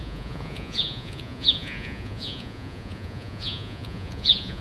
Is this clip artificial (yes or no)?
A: yes